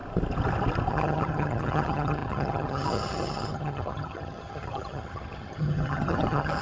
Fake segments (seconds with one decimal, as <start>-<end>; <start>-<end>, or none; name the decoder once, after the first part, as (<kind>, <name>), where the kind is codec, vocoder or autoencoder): 0.9-6.6 (vocoder, HiFi-GAN)